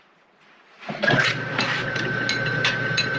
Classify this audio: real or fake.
real